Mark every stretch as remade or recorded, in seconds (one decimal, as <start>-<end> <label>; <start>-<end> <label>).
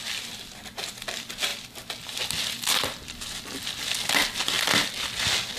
0.0-5.6 recorded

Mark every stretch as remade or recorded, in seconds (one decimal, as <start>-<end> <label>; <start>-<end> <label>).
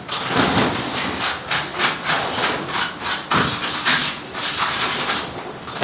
0.0-5.8 recorded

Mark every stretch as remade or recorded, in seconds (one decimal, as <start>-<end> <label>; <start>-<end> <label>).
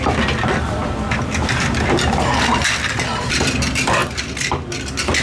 0.0-4.0 recorded; 4.0-4.7 remade; 4.7-5.2 recorded